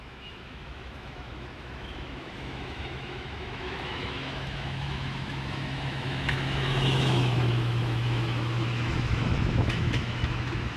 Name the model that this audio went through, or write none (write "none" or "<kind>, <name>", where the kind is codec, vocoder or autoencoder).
autoencoder, DAC-VAE